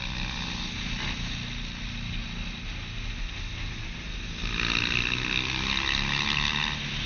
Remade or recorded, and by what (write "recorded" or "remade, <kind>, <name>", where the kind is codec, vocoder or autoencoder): recorded